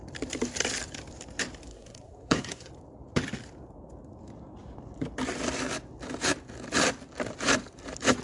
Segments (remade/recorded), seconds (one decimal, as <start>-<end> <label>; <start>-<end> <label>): 0.0-1.7 recorded; 1.7-2.7 remade; 2.7-8.2 recorded